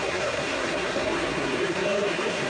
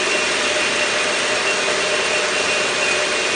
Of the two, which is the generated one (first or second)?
first